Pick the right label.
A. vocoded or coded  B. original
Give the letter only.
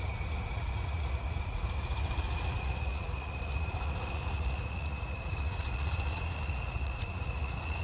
A